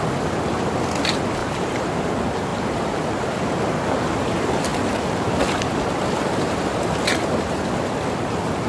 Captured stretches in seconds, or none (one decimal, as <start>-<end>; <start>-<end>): 0.0-1.4; 2.1-2.5; 3.0-8.7